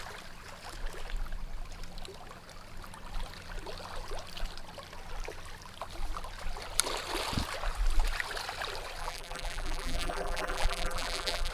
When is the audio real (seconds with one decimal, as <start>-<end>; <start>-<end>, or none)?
0.0-9.0